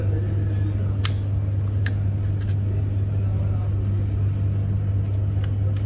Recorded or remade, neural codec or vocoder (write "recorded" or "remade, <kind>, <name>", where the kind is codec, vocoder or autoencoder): recorded